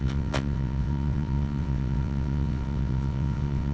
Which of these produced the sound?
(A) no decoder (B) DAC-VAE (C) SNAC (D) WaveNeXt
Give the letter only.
D